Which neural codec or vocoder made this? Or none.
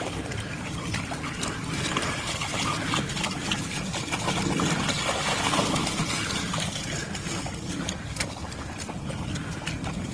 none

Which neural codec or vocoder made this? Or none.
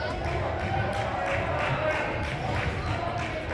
none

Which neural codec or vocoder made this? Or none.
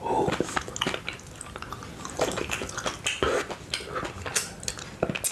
none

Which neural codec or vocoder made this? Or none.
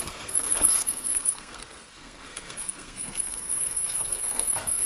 codec, SNAC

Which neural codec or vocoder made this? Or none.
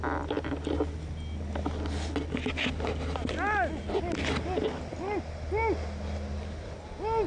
none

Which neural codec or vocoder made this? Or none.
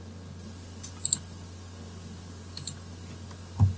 none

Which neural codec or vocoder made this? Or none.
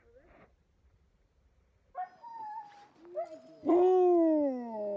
none